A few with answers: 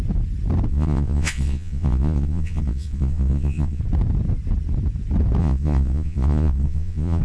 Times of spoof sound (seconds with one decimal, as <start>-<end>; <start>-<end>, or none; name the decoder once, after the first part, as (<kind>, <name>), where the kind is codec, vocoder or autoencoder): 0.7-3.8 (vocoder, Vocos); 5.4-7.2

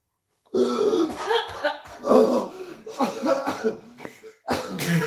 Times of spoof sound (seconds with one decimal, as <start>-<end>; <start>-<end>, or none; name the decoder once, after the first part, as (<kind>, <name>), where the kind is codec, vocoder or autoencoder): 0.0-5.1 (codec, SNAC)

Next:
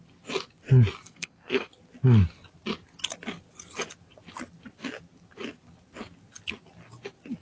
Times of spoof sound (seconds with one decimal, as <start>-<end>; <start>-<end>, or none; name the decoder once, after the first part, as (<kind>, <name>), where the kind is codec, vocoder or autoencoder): 1.0-1.7 (codec, SNAC)

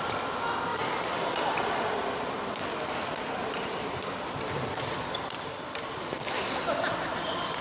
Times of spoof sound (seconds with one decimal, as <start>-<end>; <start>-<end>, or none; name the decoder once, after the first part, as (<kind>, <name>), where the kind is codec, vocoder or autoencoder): 0.7-1.4 (vocoder, BigVGAN v2); 3.4-6.9

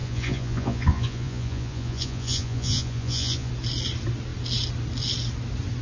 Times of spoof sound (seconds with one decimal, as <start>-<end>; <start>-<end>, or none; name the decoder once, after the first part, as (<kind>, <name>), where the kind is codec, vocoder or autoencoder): 0.0-3.5 (vocoder, Vocos)

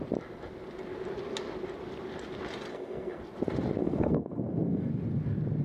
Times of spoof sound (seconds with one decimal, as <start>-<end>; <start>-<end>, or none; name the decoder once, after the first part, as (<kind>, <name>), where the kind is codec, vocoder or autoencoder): 2.7-3.2 (codec, SNAC); 3.8-4.9

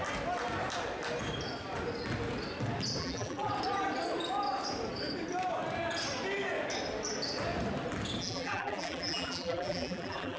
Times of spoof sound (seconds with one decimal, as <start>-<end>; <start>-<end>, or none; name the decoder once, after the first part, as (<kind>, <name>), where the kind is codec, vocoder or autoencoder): 3.0-3.5 (vocoder, BigVGAN v2); 8.2-10.4

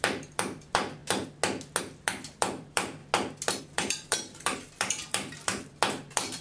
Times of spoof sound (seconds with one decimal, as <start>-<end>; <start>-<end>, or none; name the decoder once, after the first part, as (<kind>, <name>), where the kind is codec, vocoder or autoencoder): 0.0-1.0 (vocoder, BigVGAN v2); 1.8-3.0; 3.6-6.4